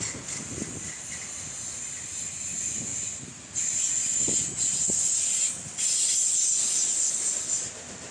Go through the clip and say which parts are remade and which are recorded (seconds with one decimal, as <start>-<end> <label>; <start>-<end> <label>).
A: 0.0-8.1 recorded